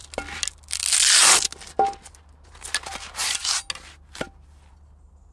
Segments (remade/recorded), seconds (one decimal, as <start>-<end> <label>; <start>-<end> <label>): 0.0-5.3 recorded